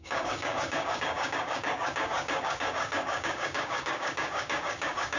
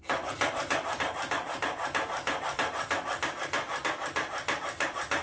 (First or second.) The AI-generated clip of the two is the first